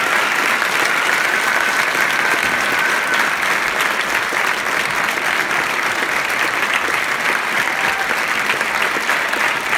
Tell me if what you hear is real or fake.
real